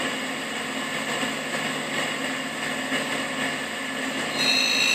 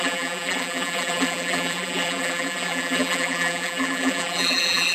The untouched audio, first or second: first